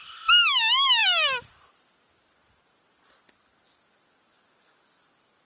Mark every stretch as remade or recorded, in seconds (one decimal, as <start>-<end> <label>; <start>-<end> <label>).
0.0-5.4 recorded